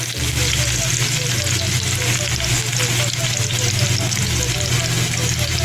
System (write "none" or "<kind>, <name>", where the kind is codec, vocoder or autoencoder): none